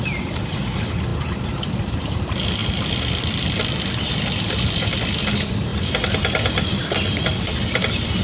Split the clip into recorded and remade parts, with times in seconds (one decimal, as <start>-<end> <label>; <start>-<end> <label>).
0.0-2.6 recorded; 2.6-3.5 remade; 3.5-8.2 recorded